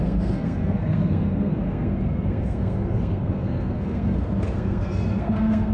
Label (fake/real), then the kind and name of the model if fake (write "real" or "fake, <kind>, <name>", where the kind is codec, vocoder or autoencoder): fake, codec, SNAC